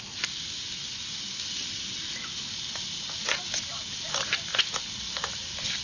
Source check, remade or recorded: recorded